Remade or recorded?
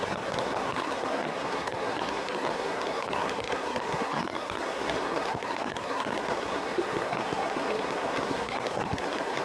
remade